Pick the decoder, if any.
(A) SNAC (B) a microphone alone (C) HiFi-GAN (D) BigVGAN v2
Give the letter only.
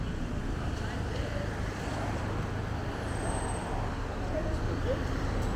B